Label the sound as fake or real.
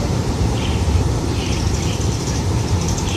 fake